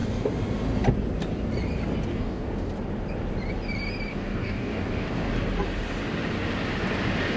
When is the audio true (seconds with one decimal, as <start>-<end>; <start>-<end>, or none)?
0.0-2.1; 2.7-4.1; 5.3-7.4